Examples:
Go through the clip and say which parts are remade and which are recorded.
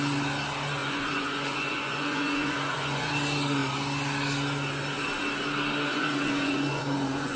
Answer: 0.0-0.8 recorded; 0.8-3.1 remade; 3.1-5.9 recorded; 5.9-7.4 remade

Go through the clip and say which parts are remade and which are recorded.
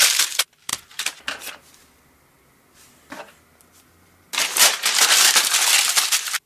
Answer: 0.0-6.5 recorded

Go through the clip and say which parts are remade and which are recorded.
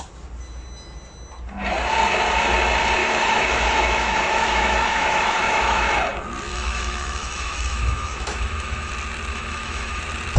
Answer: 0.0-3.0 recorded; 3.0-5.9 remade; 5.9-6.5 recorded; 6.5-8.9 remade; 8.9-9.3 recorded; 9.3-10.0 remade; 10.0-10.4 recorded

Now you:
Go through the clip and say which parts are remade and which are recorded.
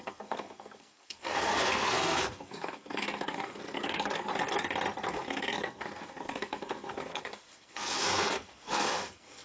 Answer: 0.0-4.3 remade; 4.3-5.1 recorded; 5.1-9.4 remade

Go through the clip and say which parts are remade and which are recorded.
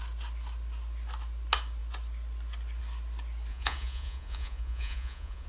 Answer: 0.0-3.5 recorded; 3.5-5.5 remade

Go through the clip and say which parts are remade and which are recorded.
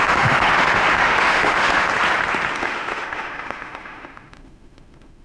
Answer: 0.0-1.9 remade; 1.9-2.5 recorded; 2.5-5.2 remade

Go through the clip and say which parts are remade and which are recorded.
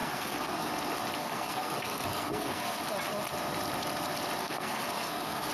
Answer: 0.0-0.7 remade; 0.7-1.2 recorded; 1.2-2.8 remade; 2.8-4.4 recorded; 4.4-5.5 remade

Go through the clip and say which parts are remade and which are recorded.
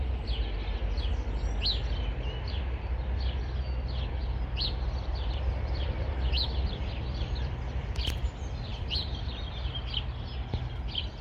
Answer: 0.0-4.2 recorded; 4.2-8.2 remade; 8.2-8.7 recorded; 8.7-9.5 remade; 9.5-11.2 recorded